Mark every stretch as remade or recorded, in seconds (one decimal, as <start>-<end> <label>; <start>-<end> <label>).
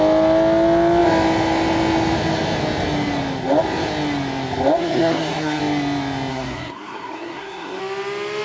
0.0-4.8 recorded; 4.8-5.6 remade; 5.6-6.3 recorded; 6.3-7.8 remade; 7.8-8.4 recorded